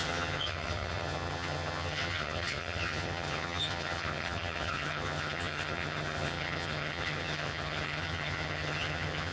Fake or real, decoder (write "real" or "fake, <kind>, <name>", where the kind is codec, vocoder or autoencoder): fake, vocoder, HiFi-GAN